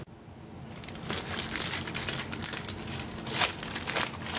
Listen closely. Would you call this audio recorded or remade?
recorded